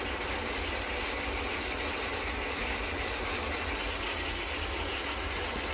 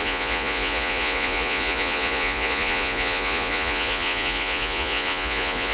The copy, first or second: second